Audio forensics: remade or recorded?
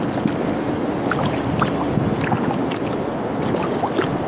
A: recorded